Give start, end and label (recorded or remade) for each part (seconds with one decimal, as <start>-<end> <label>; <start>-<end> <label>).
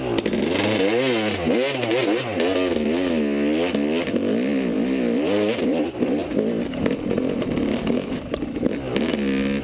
0.0-9.6 recorded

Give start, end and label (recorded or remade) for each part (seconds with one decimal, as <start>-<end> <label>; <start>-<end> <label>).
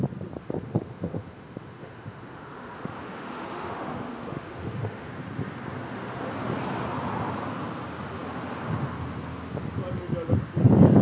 0.0-0.4 recorded; 0.4-5.1 remade; 5.1-11.0 recorded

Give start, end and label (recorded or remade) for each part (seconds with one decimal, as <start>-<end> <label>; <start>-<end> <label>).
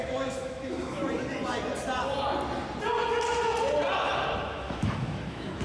0.0-1.0 remade; 1.0-4.4 recorded; 4.4-5.6 remade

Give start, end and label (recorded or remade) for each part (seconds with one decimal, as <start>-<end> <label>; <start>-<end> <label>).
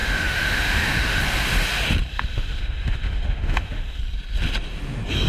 0.0-1.2 remade; 1.2-2.1 recorded; 2.1-4.0 remade; 4.0-5.3 recorded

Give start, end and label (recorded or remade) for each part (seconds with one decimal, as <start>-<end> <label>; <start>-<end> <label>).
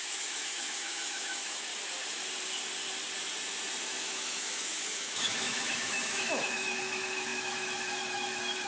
0.0-1.7 remade; 1.7-4.0 recorded; 4.0-8.7 remade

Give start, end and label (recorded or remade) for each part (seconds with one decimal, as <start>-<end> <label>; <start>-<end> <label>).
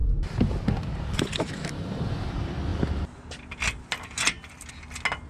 0.0-5.3 recorded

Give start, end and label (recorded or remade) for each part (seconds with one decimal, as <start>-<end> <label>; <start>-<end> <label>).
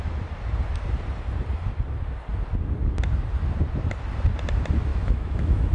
0.0-4.9 recorded; 4.9-5.7 remade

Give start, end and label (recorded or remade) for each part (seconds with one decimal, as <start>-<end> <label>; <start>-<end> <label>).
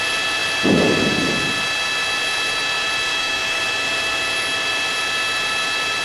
0.0-3.1 recorded; 3.1-3.6 remade; 3.6-6.0 recorded